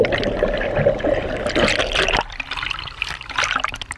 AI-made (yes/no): no